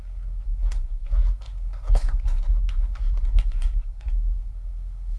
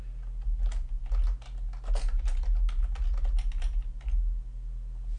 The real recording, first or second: second